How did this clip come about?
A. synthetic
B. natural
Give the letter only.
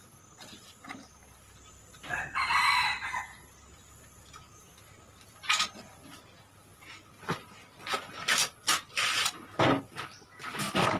B